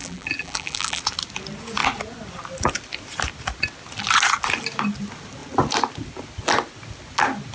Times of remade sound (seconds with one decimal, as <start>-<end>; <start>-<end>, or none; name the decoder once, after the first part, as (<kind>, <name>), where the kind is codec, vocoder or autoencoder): 0.0-1.0 (vocoder, BigVGAN v2)